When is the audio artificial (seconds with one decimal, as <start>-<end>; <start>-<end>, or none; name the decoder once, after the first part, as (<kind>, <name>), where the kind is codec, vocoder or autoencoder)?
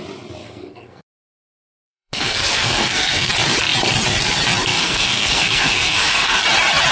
0.4-3.3 (codec, SNAC); 4.8-6.4